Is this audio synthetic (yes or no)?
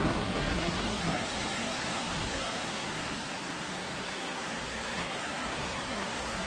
yes